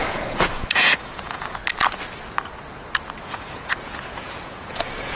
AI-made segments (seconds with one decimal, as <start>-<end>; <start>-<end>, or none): 0.0-1.6; 3.2-5.2